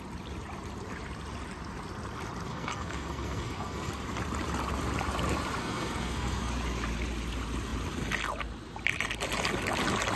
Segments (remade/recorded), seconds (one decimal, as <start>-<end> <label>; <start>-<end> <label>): 0.0-2.5 recorded; 2.5-3.9 remade; 3.9-5.6 recorded; 5.6-6.5 remade; 6.5-10.2 recorded